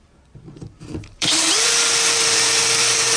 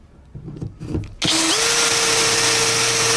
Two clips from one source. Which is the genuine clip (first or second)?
second